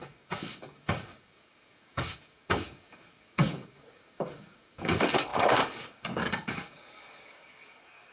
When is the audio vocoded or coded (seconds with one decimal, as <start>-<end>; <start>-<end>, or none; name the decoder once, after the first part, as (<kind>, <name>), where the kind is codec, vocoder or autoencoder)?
0.0-8.1 (codec, DAC)